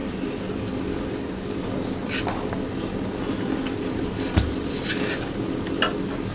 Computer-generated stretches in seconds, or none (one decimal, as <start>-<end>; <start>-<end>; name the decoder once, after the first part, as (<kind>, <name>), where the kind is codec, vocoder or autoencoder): none